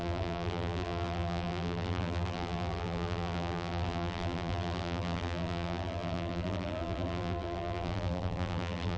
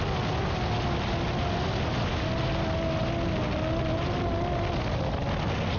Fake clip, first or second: first